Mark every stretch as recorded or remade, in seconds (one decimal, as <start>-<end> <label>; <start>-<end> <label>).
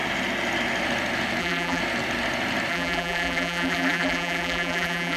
0.0-1.4 recorded; 1.4-1.8 remade; 1.8-2.7 recorded; 2.7-5.2 remade